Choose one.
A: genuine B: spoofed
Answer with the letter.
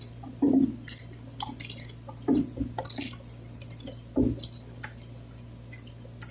A